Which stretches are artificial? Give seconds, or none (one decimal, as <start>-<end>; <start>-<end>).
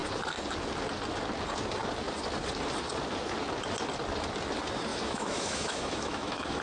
4.9-6.6